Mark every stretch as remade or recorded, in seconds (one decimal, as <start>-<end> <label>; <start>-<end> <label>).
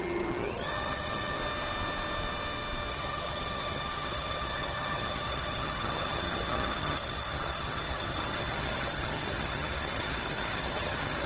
0.0-1.4 remade; 1.4-2.9 recorded; 2.9-11.3 remade